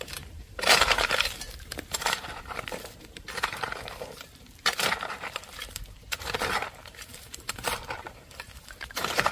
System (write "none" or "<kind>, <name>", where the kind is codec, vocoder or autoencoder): vocoder, BigVGAN v2